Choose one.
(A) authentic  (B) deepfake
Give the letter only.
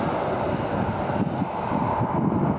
A